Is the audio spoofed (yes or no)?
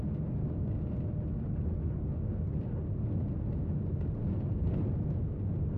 no